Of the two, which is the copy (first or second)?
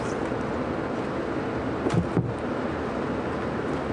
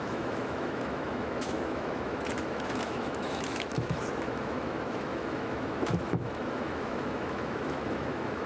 second